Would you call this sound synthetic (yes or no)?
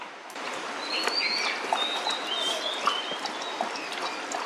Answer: no